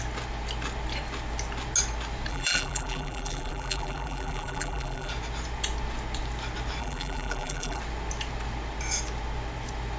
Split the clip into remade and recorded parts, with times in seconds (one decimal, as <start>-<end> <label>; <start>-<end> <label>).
0.0-2.3 recorded; 2.3-5.1 remade; 5.1-6.8 recorded; 6.8-7.8 remade; 7.8-10.0 recorded